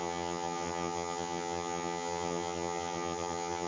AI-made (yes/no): yes